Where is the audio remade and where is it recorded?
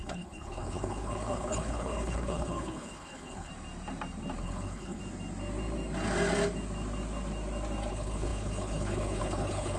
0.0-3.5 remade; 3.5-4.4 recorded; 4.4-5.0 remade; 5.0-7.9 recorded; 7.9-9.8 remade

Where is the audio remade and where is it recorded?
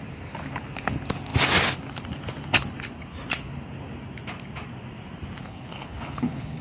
0.0-5.4 recorded; 5.4-6.6 remade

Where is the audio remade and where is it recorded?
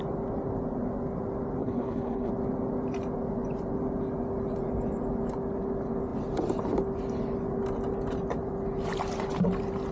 0.0-1.6 recorded; 1.6-2.3 remade; 2.3-9.9 recorded